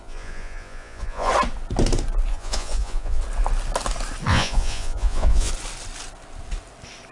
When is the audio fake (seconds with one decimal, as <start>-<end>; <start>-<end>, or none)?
0.0-1.3; 2.3-3.2; 4.3-5.5